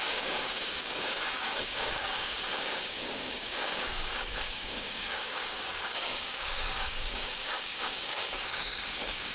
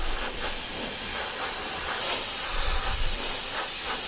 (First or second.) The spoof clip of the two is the first